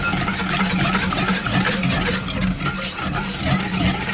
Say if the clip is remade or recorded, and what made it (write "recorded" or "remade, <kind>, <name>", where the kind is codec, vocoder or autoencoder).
recorded